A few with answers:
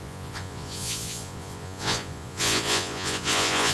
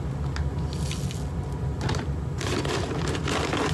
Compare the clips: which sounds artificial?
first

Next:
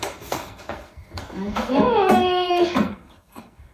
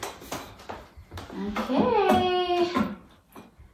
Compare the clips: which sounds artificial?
first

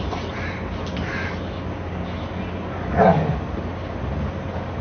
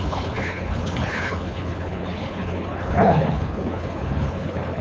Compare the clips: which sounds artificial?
second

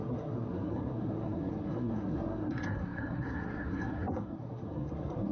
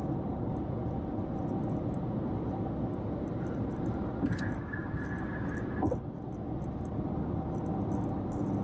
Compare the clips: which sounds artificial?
first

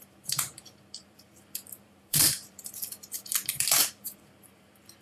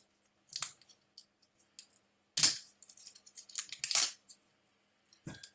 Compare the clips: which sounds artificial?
first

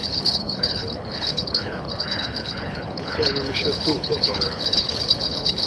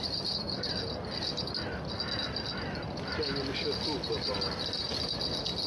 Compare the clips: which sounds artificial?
first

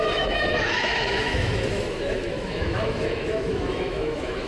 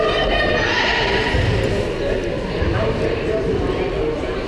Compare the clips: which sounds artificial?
first